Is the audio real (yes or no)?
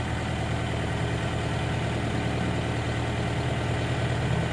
yes